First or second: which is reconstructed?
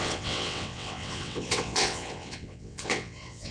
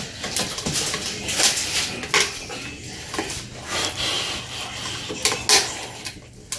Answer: first